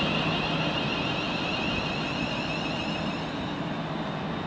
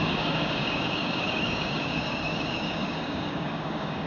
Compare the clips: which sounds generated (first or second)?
second